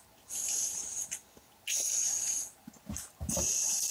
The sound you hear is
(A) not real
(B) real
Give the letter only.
B